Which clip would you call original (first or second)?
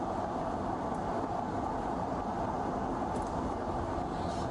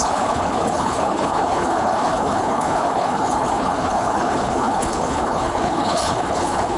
first